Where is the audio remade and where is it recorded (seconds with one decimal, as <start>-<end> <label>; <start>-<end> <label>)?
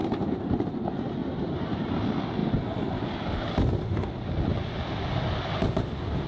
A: 0.0-0.6 remade; 0.6-1.2 recorded; 1.2-2.0 remade; 2.0-6.3 recorded